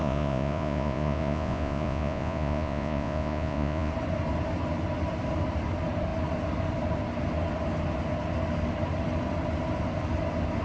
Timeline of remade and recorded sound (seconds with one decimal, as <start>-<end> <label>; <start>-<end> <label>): 0.0-3.9 remade; 3.9-10.6 recorded